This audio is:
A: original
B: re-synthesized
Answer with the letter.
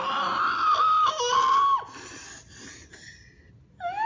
A